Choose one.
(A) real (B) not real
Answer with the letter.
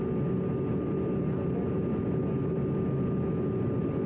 A